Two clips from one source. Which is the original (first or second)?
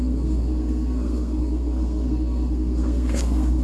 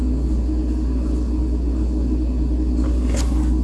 second